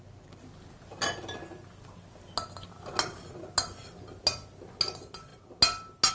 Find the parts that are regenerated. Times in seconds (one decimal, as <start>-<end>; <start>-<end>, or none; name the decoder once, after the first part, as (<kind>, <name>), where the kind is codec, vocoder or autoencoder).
none